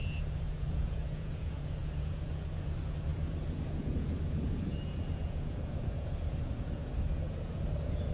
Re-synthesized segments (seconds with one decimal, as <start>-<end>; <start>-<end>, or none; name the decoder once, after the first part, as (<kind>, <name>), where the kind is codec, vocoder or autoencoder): 0.0-8.1 (vocoder, Vocos)